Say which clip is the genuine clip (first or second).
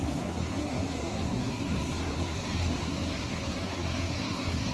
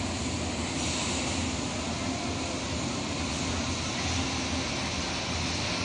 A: second